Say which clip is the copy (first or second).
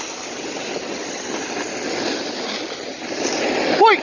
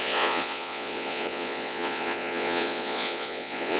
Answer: second